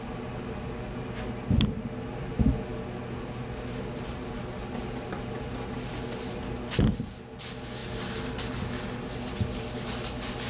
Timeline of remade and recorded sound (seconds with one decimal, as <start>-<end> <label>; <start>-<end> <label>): 0.0-10.5 recorded